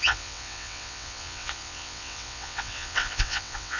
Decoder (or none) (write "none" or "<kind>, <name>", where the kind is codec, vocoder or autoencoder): vocoder, WaveNeXt